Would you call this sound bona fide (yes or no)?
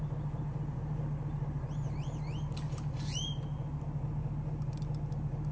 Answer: yes